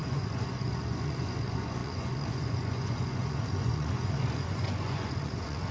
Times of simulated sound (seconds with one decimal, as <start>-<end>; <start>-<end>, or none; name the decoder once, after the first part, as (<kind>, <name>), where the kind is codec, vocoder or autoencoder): 0.0-5.7 (vocoder, Vocos)

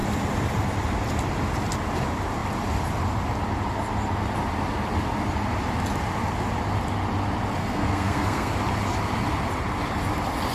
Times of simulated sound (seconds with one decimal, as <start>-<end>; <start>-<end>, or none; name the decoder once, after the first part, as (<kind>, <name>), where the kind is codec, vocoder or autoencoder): 7.6-8.5 (codec, SNAC)

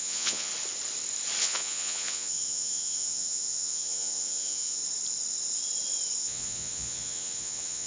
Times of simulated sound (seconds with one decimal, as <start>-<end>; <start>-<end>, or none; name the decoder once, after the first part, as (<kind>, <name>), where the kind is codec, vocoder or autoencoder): 0.0-0.5 (vocoder, Vocos); 1.4-4.8; 6.2-7.9

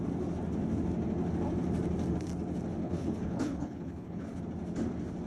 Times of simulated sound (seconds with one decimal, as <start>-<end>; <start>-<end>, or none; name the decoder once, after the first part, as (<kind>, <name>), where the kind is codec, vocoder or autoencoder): 2.8-4.4 (codec, HILCodec)

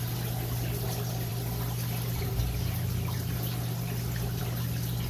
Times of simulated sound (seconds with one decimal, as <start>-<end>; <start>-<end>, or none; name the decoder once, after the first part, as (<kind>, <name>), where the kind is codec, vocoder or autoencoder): none

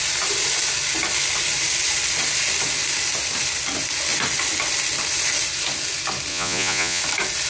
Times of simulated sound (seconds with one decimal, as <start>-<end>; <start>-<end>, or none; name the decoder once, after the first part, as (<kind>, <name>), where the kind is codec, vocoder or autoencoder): 6.3-7.0 (vocoder, Vocos)

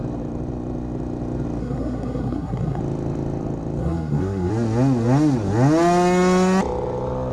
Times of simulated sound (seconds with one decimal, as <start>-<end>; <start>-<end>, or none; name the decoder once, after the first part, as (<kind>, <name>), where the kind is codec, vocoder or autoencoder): 1.6-2.8 (codec, SNAC); 3.8-4.5

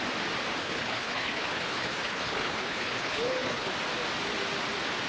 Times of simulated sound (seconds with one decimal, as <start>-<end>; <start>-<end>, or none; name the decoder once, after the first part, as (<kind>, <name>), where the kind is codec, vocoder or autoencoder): 0.6-3.7 (codec, HILCodec)